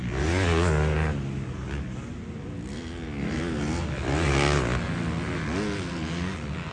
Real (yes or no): yes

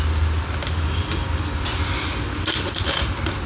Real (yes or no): yes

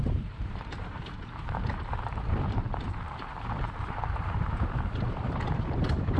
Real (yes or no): no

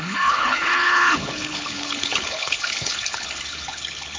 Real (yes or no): no